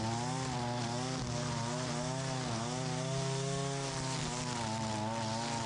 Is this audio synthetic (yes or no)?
no